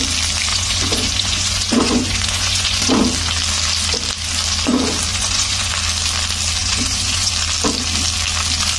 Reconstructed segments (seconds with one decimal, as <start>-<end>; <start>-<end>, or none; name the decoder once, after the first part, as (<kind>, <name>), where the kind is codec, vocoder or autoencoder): 0.5-2.9 (vocoder, Vocos); 5.1-5.7; 6.6-7.3